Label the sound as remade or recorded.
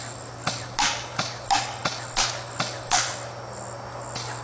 recorded